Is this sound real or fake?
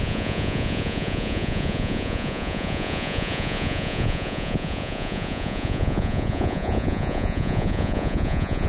fake